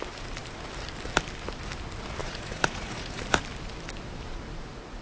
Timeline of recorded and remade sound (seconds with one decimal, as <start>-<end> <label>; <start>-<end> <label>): 0.0-2.2 recorded; 2.2-3.2 remade; 3.2-5.0 recorded